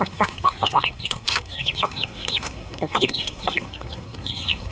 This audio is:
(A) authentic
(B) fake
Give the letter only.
B